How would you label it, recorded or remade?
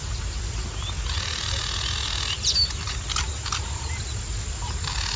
recorded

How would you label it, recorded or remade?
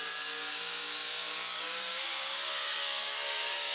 remade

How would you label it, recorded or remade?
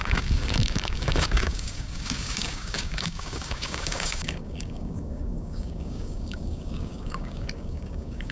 remade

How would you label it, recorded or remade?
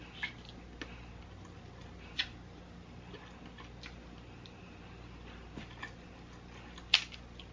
recorded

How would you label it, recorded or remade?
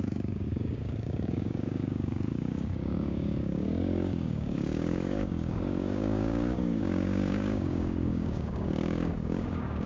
remade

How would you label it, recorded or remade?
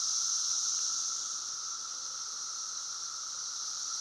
recorded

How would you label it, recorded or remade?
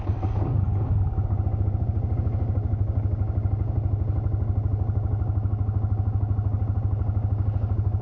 recorded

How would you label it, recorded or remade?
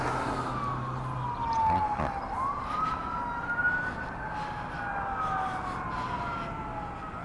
recorded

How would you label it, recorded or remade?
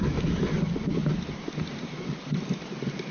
recorded